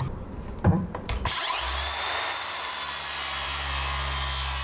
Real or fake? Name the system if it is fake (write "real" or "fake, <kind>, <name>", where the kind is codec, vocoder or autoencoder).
fake, vocoder, BigVGAN v2